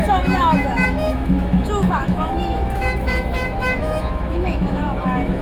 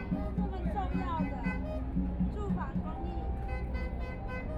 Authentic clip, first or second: second